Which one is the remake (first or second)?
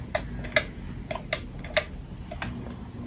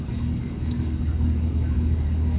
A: second